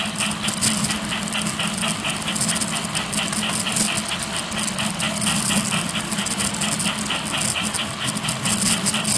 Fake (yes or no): no